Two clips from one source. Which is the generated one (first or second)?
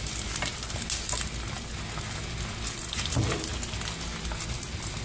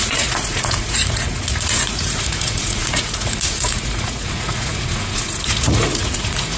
second